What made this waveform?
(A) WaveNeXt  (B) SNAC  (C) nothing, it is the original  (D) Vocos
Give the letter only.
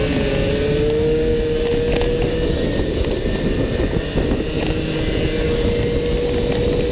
C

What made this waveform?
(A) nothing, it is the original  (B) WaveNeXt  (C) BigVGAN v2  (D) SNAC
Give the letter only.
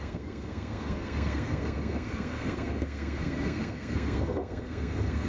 D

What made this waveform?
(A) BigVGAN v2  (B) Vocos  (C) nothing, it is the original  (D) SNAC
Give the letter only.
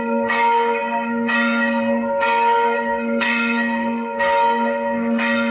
D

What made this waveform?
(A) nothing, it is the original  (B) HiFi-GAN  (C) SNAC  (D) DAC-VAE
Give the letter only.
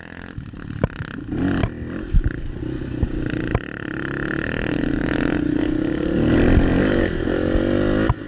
A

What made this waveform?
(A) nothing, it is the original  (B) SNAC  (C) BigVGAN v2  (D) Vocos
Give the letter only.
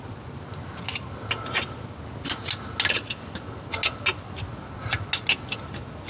A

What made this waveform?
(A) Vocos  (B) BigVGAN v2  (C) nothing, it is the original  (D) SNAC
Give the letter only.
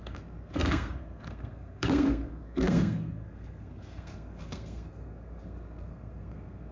D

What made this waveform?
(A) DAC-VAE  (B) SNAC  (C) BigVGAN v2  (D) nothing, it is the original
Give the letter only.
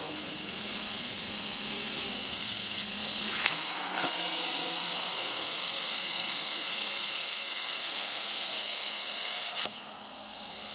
B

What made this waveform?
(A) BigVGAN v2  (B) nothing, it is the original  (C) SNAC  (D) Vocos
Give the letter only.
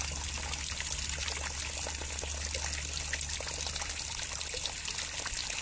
B